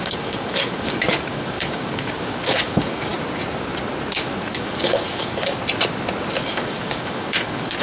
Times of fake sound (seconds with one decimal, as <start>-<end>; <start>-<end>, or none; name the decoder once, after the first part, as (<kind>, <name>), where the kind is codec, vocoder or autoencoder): 0.0-3.1 (codec, DAC); 4.1-5.6; 6.4-7.8